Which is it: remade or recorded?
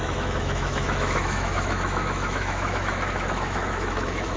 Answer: remade